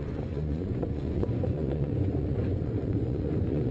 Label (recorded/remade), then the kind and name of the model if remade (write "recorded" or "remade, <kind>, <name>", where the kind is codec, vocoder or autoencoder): remade, vocoder, Vocos